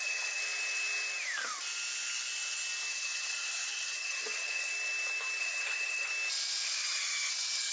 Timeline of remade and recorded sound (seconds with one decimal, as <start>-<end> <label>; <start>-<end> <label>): 0.0-0.4 remade; 0.4-2.9 recorded; 2.9-4.7 remade; 4.7-5.4 recorded; 5.4-6.1 remade; 6.1-6.8 recorded; 6.8-7.7 remade